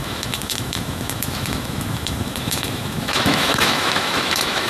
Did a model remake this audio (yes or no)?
yes